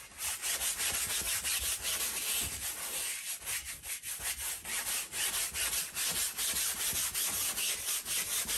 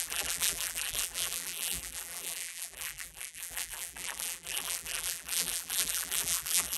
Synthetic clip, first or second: second